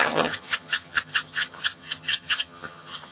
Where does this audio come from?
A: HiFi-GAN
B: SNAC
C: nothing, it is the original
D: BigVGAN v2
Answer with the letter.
A